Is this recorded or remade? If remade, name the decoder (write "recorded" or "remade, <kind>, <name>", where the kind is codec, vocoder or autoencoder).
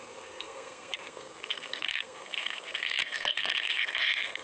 remade, codec, SNAC